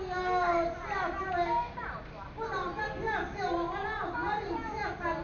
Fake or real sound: real